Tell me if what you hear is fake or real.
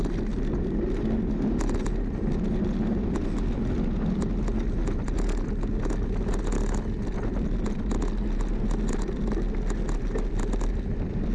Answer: real